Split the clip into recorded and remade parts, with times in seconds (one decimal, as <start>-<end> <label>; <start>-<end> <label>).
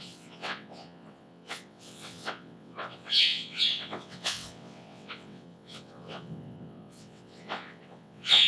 0.0-8.5 remade